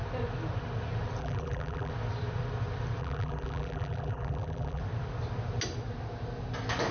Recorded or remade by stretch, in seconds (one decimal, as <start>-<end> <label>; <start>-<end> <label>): 0.0-1.2 recorded; 1.2-1.9 remade; 1.9-3.0 recorded; 3.0-4.8 remade; 4.8-6.9 recorded